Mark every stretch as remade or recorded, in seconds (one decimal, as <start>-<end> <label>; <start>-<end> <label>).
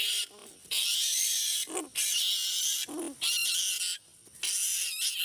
0.0-0.4 recorded; 0.4-2.0 remade; 2.0-2.7 recorded; 2.7-3.3 remade; 3.3-5.2 recorded